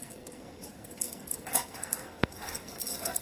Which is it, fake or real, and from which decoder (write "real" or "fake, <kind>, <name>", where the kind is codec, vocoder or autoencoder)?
fake, codec, SNAC